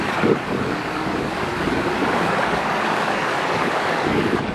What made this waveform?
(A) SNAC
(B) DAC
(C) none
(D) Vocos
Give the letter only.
B